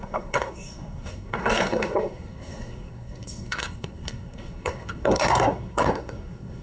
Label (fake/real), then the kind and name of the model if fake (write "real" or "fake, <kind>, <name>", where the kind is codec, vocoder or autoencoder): fake, codec, SNAC